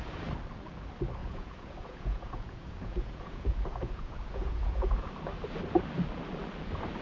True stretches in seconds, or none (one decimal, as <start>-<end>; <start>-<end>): 0.0-1.2; 5.1-7.0

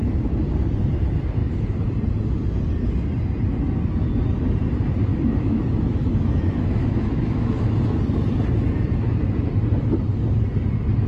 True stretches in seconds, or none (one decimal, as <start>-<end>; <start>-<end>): 0.0-1.4; 1.9-5.1; 8.0-11.1

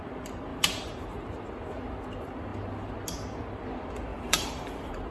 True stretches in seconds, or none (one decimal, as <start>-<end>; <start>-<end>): 0.0-0.5; 1.5-4.1

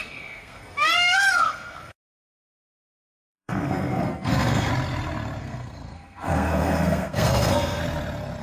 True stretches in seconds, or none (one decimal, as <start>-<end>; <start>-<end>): 4.7-5.4; 7.8-8.4

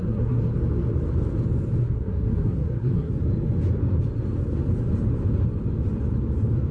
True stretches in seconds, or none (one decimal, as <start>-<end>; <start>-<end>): 0.5-1.8; 3.1-6.7

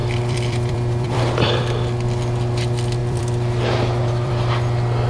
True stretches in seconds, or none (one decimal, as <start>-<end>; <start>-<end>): 1.6-3.0; 4.3-5.1